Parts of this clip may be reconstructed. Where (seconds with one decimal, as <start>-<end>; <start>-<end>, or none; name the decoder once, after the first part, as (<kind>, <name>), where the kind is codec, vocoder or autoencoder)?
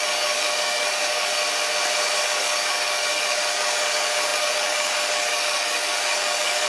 0.0-1.4 (codec, DAC); 2.2-6.7